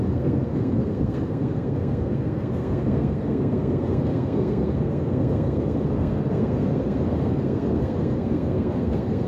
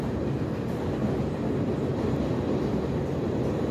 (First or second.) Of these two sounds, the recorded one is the second